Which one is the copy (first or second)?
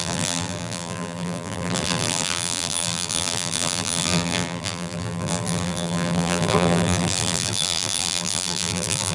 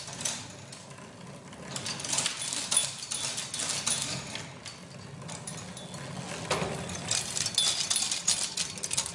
first